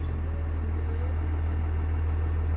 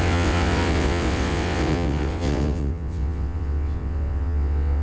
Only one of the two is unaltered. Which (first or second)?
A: first